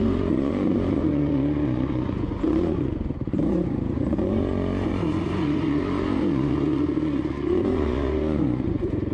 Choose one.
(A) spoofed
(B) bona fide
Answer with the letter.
A